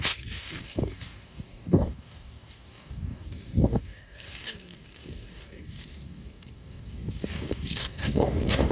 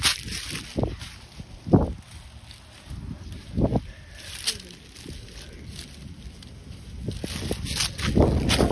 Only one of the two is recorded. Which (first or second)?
second